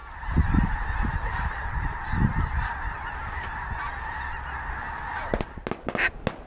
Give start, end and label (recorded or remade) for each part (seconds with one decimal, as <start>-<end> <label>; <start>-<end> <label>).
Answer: 0.0-6.5 recorded